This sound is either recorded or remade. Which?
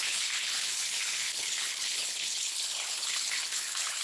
remade